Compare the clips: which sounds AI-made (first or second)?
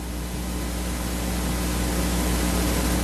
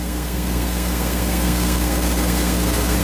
second